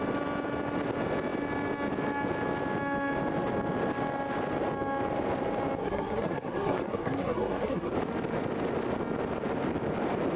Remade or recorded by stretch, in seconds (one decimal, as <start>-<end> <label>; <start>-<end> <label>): 0.0-5.8 recorded; 5.8-7.9 remade; 7.9-10.4 recorded